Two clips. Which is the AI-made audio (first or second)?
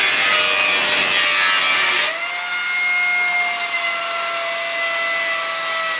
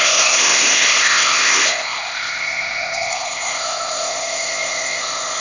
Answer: second